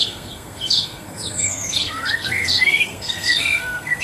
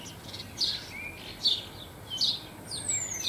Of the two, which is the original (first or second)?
second